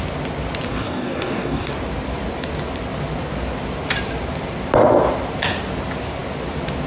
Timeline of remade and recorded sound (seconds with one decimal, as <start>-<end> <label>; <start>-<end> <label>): 0.0-0.7 recorded; 0.7-1.7 remade; 1.7-6.9 recorded